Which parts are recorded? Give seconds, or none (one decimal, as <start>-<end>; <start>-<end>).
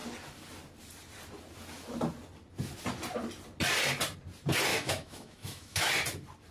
0.0-4.7; 5.9-6.5